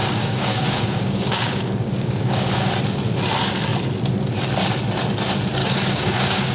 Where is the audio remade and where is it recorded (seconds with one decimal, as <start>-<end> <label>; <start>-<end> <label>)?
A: 0.0-2.7 remade; 2.7-5.6 recorded; 5.6-6.5 remade

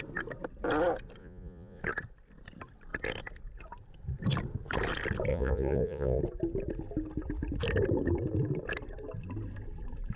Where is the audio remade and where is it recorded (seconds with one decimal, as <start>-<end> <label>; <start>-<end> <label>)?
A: 0.0-1.2 recorded; 1.2-1.8 remade; 1.8-5.3 recorded; 5.3-6.2 remade; 6.2-10.2 recorded

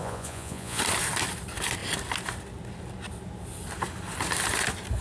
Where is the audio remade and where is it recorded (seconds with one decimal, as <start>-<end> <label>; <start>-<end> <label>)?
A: 0.0-0.8 remade; 0.8-5.0 recorded

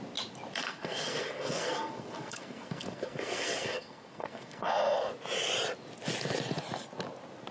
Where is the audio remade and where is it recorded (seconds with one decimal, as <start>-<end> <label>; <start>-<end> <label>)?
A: 0.0-0.6 recorded; 0.6-5.1 remade; 5.1-7.5 recorded

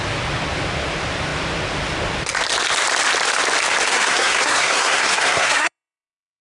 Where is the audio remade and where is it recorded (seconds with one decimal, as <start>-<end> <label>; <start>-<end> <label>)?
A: 0.0-3.9 recorded; 3.9-6.4 remade

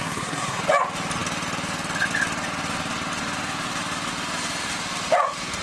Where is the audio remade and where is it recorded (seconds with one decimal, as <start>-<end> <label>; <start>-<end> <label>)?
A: 0.0-0.6 remade; 0.6-5.6 recorded

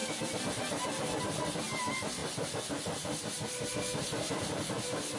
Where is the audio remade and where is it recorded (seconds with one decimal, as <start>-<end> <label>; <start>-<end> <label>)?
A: 0.0-1.2 remade; 1.2-2.2 recorded; 2.2-3.7 remade; 3.7-5.2 recorded